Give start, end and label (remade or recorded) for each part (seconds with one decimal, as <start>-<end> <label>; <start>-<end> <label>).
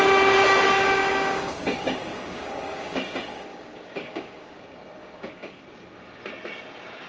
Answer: 0.0-1.0 recorded; 1.0-4.6 remade; 4.6-5.0 recorded; 5.0-5.6 remade; 5.6-7.1 recorded